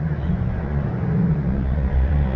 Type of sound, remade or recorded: remade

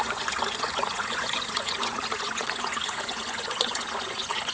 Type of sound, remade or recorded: remade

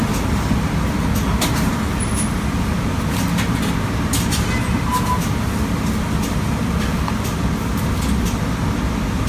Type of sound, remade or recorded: recorded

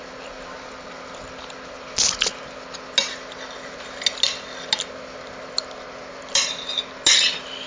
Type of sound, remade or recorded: recorded